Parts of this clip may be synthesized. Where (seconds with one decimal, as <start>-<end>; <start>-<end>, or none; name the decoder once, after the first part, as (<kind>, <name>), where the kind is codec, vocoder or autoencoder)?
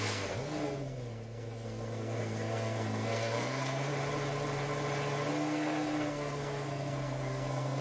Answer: 0.0-3.9 (codec, SNAC); 5.3-7.8